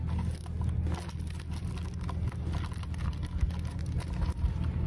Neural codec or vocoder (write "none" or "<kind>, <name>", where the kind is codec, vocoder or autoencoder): none